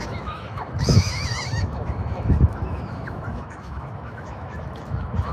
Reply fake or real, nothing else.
fake